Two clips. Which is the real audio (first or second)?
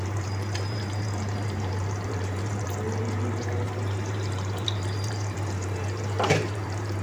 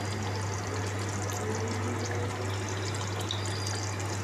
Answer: second